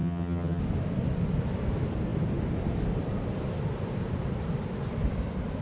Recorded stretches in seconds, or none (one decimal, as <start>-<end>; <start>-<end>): 0.6-5.6